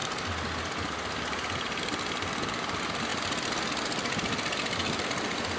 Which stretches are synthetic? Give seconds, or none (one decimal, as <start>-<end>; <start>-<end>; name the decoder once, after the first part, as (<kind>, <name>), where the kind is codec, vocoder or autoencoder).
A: none